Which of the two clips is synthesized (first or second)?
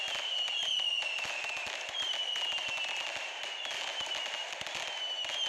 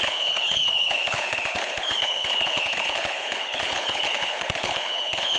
second